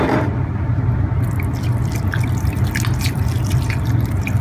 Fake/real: real